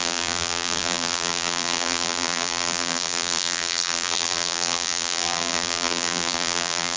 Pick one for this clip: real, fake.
fake